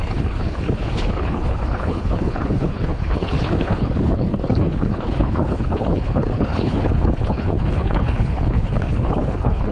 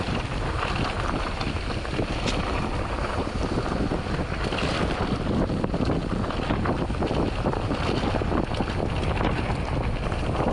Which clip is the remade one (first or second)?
first